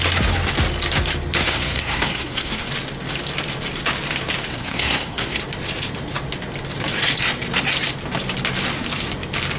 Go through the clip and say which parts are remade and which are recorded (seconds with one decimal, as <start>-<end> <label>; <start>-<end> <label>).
0.0-1.4 recorded; 1.4-2.7 remade; 2.7-4.5 recorded; 4.5-5.4 remade; 5.4-9.6 recorded